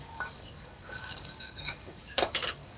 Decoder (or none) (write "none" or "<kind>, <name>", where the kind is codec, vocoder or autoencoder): codec, DAC